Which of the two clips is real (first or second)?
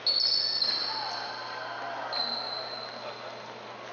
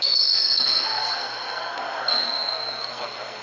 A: first